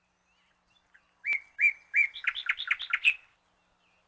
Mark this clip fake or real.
real